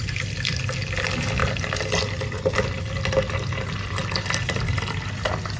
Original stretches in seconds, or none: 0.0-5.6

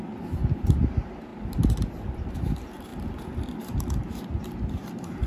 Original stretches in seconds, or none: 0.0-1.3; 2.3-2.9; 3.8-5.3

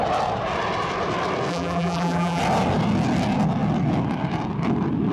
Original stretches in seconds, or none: 0.0-1.5; 2.4-5.1

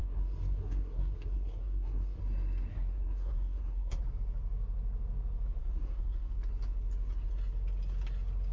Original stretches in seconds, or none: 2.2-2.7; 4.0-5.6; 6.3-8.5

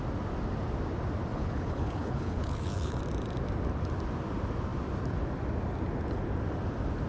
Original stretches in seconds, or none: 0.0-1.3; 3.0-7.1

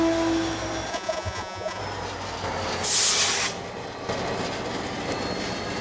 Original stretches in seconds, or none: 0.0-0.9; 1.8-5.8

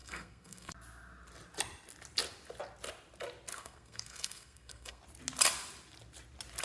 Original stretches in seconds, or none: 0.7-3.5; 5.0-6.6